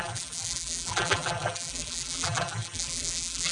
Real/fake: fake